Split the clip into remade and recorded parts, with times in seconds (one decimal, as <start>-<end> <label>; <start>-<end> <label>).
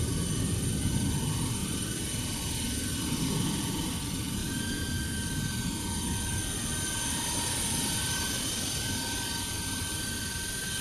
0.0-1.6 recorded; 1.6-3.1 remade; 3.1-10.8 recorded